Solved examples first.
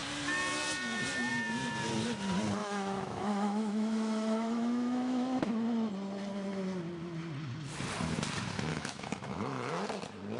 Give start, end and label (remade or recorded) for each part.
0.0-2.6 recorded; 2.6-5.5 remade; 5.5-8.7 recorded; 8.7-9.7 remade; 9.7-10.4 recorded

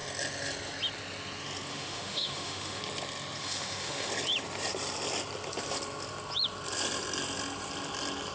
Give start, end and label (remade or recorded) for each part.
0.0-1.7 recorded; 1.7-2.8 remade; 2.8-3.4 recorded; 3.4-4.1 remade; 4.1-8.3 recorded

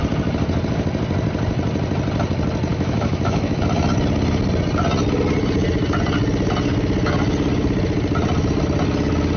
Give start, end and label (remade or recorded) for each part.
0.0-2.7 recorded; 2.7-3.6 remade; 3.6-9.4 recorded

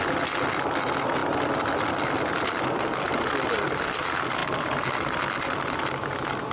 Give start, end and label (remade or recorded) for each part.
0.0-6.5 recorded

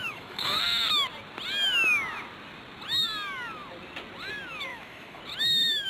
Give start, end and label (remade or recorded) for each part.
0.0-0.6 remade; 0.6-4.7 recorded; 4.7-5.2 remade; 5.2-5.9 recorded

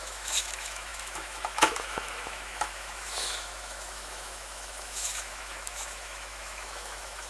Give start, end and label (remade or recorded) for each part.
0.0-7.3 remade

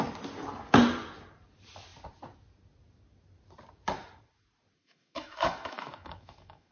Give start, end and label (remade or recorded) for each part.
0.0-4.8 recorded; 4.8-6.7 remade